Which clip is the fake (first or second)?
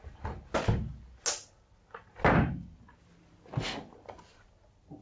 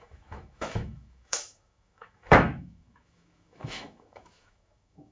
second